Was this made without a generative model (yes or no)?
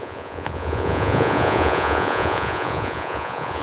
no